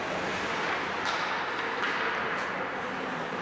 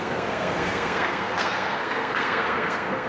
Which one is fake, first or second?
second